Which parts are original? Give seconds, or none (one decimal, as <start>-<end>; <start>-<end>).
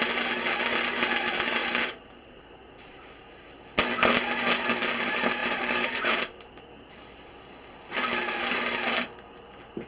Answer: 0.0-1.6; 3.5-5.4; 6.4-9.9